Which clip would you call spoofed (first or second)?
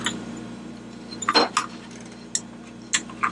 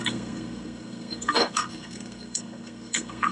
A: second